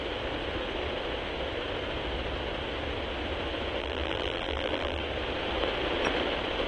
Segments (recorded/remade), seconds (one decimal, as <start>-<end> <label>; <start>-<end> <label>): 0.0-3.8 recorded; 3.8-5.0 remade; 5.0-6.7 recorded